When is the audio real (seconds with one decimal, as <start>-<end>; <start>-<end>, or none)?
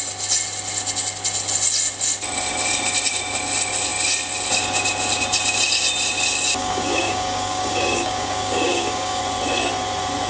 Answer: 0.0-6.6; 9.2-10.3